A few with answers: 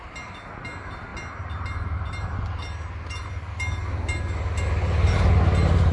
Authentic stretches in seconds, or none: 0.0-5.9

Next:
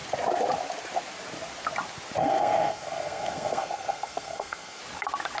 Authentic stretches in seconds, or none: 0.0-2.2; 4.8-5.4

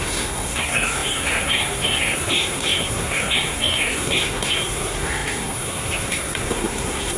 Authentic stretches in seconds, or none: none